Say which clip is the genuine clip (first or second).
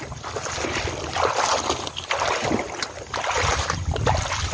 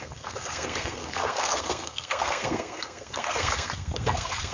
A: first